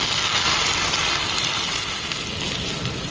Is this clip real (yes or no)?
yes